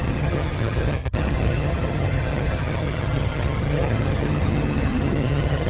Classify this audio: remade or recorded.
remade